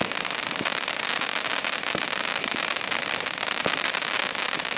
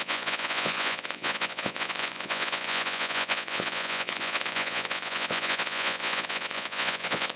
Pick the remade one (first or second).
second